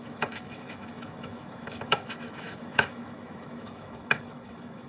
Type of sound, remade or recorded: remade